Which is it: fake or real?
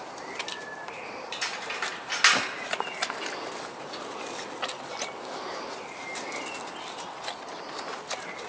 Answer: real